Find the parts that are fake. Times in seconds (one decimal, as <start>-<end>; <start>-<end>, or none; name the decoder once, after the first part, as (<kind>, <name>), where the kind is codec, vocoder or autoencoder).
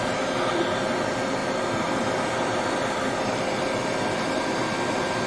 1.4-4.6 (vocoder, BigVGAN v2)